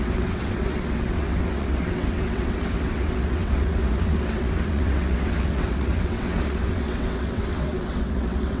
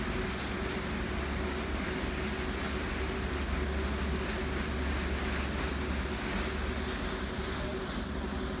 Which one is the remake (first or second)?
first